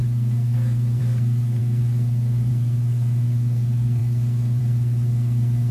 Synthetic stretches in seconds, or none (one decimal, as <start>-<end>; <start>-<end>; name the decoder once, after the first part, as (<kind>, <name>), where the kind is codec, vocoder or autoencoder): 0.0-5.7 (codec, SNAC)